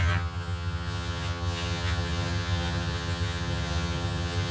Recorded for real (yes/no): no